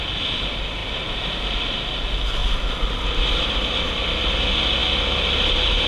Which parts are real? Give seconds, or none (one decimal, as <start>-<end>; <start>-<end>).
0.0-5.9

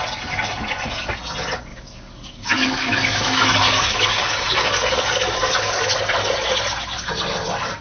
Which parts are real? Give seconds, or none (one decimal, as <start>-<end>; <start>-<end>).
0.0-1.7; 6.0-7.8

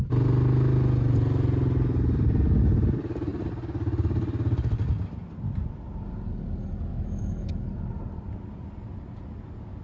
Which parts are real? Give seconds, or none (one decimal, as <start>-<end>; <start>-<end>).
0.0-6.9; 7.5-9.8

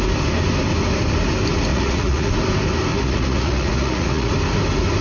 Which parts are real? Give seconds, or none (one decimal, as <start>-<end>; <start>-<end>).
0.0-1.7; 2.3-2.9; 4.3-5.0

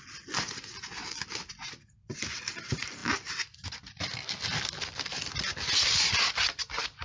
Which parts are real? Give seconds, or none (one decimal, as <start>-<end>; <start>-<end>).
0.0-7.0

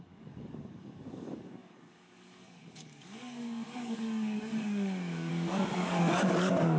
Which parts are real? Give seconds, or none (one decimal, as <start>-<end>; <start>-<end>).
none